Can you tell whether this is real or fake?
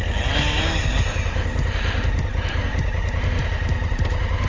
real